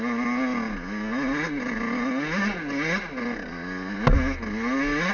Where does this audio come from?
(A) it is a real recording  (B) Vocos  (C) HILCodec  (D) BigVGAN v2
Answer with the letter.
A